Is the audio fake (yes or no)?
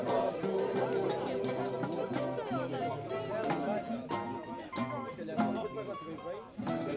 no